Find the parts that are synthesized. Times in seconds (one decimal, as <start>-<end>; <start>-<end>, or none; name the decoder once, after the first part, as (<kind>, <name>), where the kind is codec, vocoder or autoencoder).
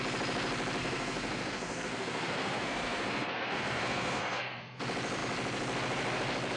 0.8-4.8 (codec, SNAC)